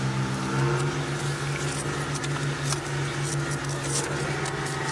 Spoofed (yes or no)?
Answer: no